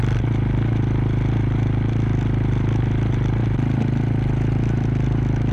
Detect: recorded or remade recorded